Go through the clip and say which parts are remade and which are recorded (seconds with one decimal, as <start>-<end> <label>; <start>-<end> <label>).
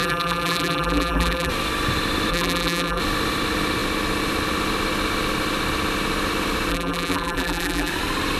0.0-1.5 remade; 1.5-2.3 recorded; 2.3-3.0 remade; 3.0-6.7 recorded; 6.7-7.9 remade; 7.9-8.4 recorded